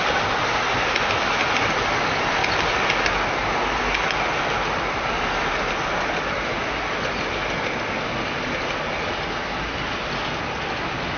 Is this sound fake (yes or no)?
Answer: no